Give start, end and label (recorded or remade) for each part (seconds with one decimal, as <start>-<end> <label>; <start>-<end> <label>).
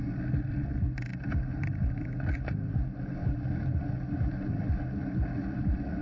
0.0-3.2 recorded; 3.2-3.8 remade; 3.8-5.4 recorded; 5.4-6.0 remade